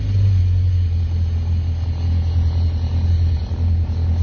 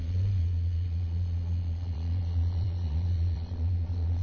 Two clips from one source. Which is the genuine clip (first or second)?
first